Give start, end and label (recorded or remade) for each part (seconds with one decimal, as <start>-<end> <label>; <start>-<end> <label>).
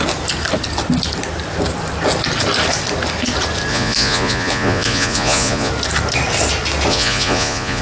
0.0-3.7 recorded; 3.7-5.7 remade; 5.7-6.9 recorded; 6.9-7.8 remade